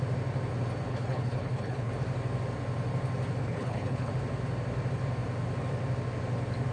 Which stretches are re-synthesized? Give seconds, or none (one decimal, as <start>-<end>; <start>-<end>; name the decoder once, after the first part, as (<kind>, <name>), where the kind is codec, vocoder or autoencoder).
0.9-1.9 (codec, HILCodec); 3.4-4.1